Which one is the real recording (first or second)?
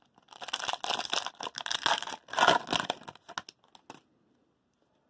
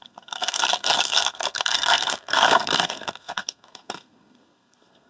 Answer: first